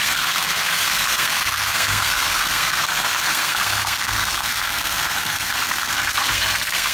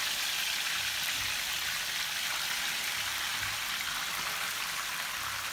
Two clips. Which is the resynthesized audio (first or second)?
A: first